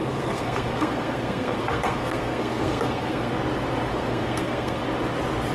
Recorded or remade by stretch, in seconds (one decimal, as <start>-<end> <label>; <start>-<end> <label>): 0.0-3.3 remade; 3.3-3.9 recorded; 3.9-4.8 remade; 4.8-5.5 recorded